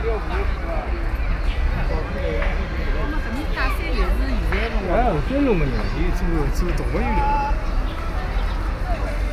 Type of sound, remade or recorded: recorded